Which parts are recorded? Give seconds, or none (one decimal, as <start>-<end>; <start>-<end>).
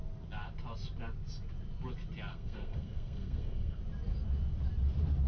0.0-2.3; 3.8-5.3